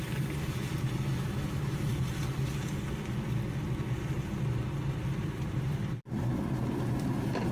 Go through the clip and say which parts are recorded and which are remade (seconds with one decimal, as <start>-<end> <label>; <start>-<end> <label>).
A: 0.0-1.9 remade; 1.9-5.1 recorded; 5.1-7.5 remade